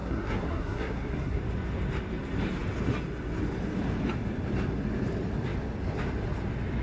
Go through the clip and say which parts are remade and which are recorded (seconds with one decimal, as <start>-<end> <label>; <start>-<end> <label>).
0.0-1.4 remade; 1.4-6.8 recorded